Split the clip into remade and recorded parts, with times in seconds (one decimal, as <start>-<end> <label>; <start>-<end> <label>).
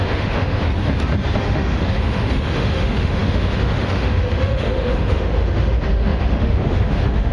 0.0-0.7 remade; 0.7-1.4 recorded; 1.4-7.3 remade